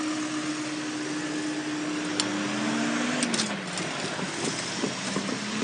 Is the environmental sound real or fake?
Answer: real